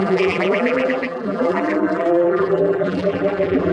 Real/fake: fake